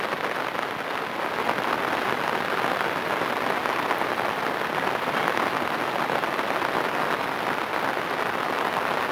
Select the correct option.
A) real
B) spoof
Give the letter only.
A